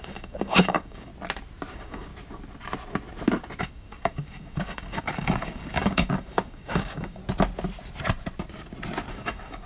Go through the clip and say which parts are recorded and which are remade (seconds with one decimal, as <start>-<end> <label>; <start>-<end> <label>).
0.0-1.1 remade; 1.1-1.7 recorded; 1.7-2.1 remade; 2.1-3.6 recorded; 3.6-7.2 remade; 7.2-9.1 recorded; 9.1-9.7 remade